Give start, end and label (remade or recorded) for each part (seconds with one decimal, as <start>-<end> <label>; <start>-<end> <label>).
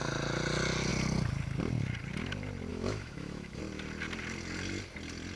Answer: 0.0-2.7 recorded; 2.7-3.6 remade; 3.6-5.4 recorded